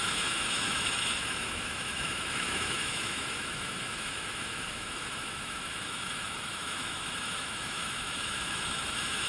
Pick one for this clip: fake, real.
fake